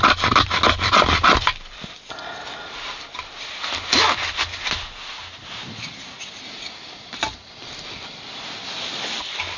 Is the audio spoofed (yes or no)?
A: no